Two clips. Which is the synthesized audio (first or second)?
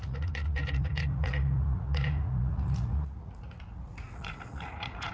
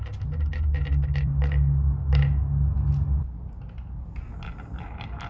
first